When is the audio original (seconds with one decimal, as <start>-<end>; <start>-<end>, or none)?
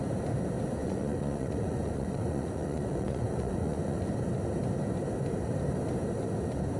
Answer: 0.0-0.8; 4.1-6.8